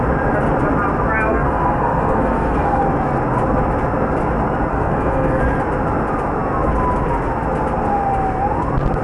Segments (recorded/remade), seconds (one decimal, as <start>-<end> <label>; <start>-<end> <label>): 0.0-1.3 recorded; 1.3-2.8 remade; 2.8-4.7 recorded; 4.7-5.4 remade; 5.4-9.0 recorded